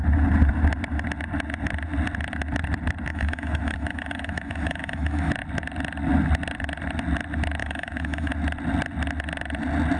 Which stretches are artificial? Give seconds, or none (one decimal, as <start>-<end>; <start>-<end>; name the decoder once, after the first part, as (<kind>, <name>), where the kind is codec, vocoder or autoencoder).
3.1-5.3 (autoencoder, DAC-VAE); 7.6-8.3